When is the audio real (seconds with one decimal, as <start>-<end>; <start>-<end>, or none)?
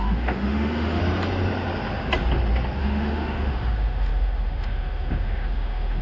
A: 1.0-2.8